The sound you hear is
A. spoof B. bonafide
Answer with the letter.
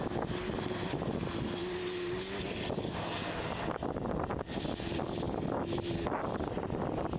B